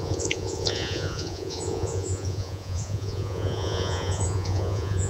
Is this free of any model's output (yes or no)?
no